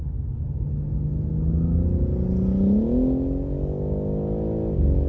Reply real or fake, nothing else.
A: real